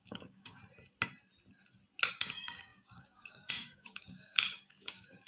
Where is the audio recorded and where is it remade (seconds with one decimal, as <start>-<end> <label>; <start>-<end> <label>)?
0.0-0.6 remade; 0.6-2.1 recorded; 2.1-5.3 remade